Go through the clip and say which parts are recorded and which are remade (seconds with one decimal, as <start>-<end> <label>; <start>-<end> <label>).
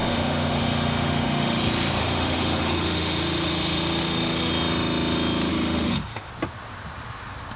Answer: 0.0-1.6 remade; 1.6-2.0 recorded; 2.0-4.5 remade; 4.5-5.5 recorded; 5.5-6.3 remade; 6.3-7.6 recorded